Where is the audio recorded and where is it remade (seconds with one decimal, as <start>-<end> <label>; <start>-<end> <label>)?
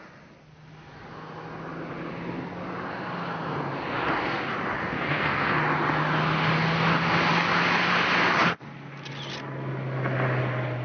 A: 0.0-4.8 recorded; 4.8-5.6 remade; 5.6-10.8 recorded